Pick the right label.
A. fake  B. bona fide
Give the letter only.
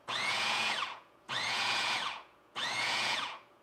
A